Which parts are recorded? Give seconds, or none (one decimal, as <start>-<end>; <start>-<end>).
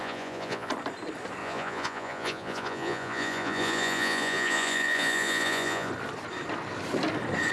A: 0.7-1.4; 5.9-7.5